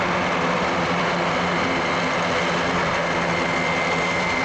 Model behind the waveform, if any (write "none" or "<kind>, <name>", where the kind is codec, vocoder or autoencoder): none